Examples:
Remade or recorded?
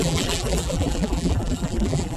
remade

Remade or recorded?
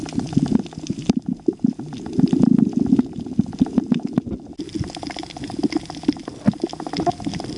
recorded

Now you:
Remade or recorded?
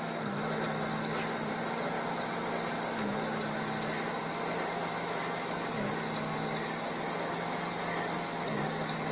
recorded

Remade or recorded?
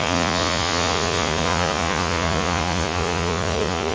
remade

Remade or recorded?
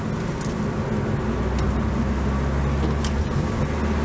recorded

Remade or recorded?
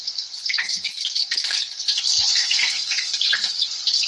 remade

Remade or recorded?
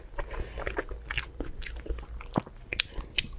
recorded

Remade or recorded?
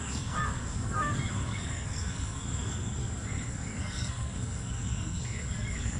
remade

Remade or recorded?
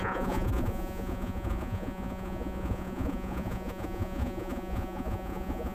remade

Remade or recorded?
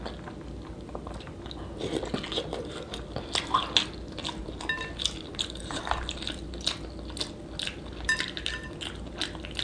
recorded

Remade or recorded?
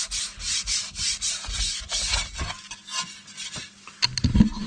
recorded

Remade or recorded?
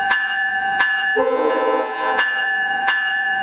remade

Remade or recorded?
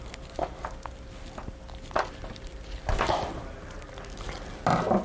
recorded